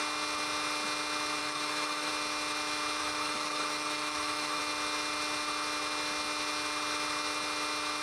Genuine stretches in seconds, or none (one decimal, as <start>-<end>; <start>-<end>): 0.0-1.4; 2.1-3.0; 4.6-8.0